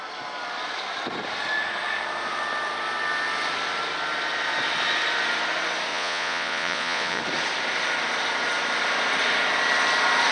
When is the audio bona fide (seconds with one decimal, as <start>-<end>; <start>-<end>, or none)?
0.0-5.9; 7.2-10.3